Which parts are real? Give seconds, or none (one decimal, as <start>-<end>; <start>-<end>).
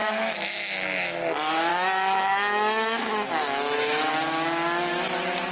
1.2-1.7; 4.1-5.5